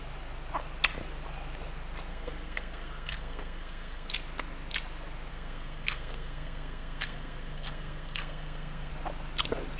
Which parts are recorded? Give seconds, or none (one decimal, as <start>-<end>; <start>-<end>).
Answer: 0.0-2.1; 4.1-5.3; 8.9-9.8